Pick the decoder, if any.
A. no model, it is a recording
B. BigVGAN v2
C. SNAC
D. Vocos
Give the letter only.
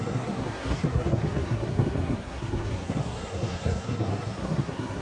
C